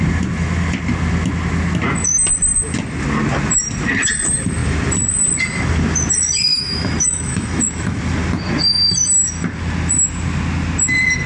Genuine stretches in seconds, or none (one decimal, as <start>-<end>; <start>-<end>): 0.0-6.5; 8.0-11.3